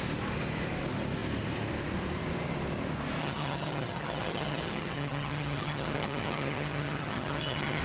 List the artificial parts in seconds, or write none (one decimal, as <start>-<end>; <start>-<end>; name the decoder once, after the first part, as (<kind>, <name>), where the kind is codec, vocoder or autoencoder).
3.2-7.8 (vocoder, HiFi-GAN)